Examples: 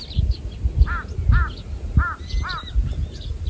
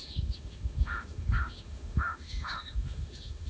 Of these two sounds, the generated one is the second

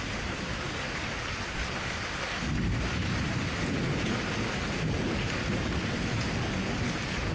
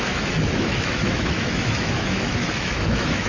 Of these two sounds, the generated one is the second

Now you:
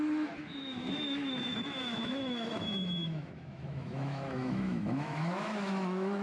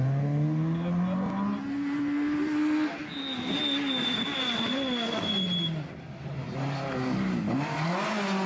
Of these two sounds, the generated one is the first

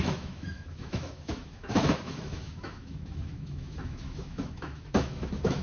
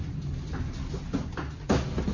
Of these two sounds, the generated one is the first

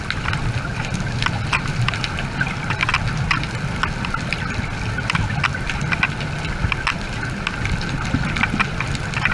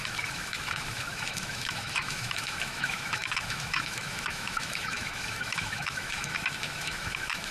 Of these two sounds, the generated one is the second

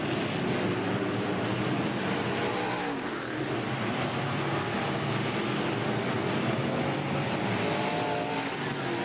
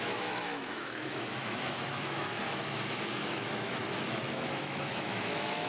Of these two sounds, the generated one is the second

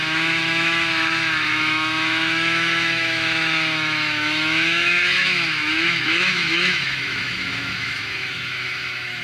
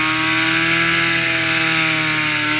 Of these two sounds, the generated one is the first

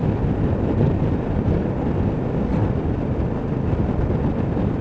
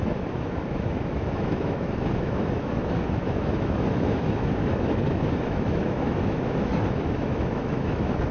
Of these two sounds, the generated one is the second